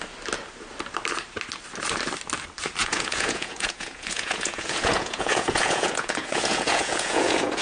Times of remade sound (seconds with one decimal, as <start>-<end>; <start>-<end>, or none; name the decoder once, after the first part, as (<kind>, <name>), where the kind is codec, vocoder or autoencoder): 2.8-7.6 (vocoder, Vocos)